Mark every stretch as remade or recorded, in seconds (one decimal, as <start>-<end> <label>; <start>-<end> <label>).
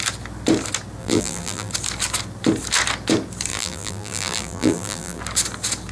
0.0-1.0 recorded; 1.0-1.7 remade; 1.7-3.5 recorded; 3.5-5.2 remade; 5.2-5.9 recorded